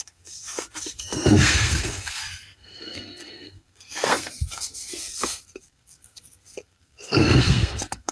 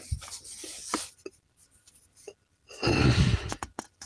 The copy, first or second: first